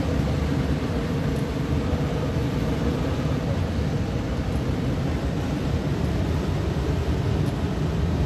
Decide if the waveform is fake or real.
fake